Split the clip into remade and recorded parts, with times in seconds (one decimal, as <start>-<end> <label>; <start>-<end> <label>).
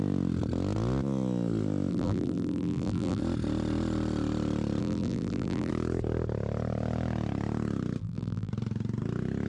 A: 0.0-1.9 recorded; 1.9-3.2 remade; 3.2-4.8 recorded; 4.8-5.7 remade; 5.7-8.0 recorded; 8.0-8.5 remade; 8.5-9.5 recorded